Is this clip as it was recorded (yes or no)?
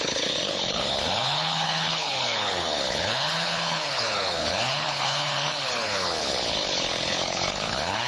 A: no